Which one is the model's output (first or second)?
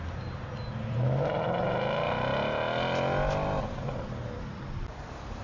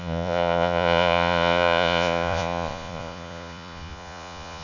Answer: second